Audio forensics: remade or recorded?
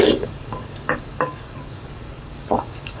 remade